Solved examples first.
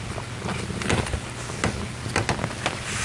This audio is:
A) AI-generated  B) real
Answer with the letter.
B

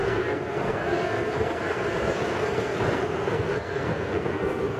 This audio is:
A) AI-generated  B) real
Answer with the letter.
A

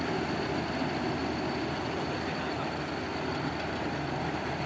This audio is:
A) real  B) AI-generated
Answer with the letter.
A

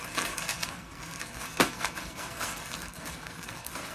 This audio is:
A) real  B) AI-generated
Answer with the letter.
B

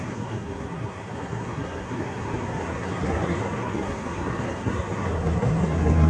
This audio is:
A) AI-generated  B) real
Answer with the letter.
A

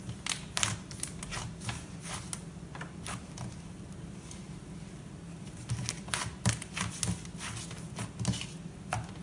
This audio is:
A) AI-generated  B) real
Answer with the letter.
B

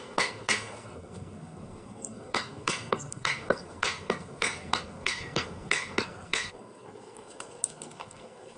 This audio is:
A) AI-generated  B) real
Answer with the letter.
A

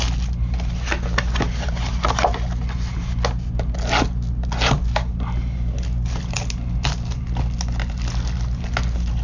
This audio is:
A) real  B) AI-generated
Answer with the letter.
A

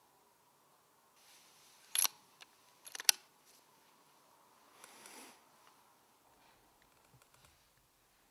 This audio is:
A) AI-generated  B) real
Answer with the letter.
B